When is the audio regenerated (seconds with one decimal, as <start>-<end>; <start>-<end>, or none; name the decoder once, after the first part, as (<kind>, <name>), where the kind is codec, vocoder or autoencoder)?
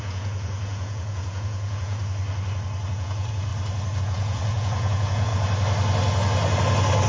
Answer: 0.0-2.0 (vocoder, Vocos); 2.9-3.5; 4.0-5.3